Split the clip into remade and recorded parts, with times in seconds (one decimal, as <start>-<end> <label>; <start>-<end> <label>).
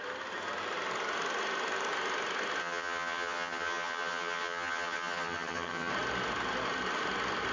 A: 0.0-2.6 recorded; 2.6-5.9 remade; 5.9-7.5 recorded